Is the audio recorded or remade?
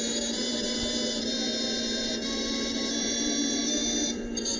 remade